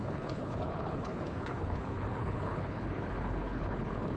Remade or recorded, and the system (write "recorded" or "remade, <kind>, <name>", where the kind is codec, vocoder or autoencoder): remade, codec, HILCodec